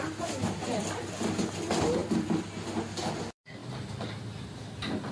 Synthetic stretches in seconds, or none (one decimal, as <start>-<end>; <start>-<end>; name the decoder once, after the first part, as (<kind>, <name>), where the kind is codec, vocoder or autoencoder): 0.0-3.6 (vocoder, BigVGAN v2)